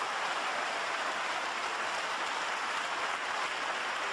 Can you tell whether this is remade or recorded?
recorded